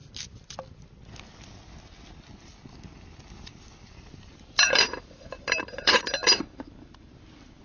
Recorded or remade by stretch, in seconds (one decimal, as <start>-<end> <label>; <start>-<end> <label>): 0.0-3.9 recorded; 3.9-6.1 remade; 6.1-7.6 recorded